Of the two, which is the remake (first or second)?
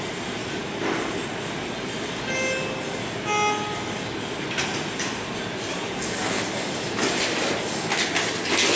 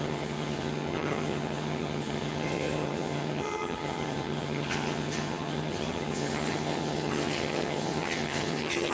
second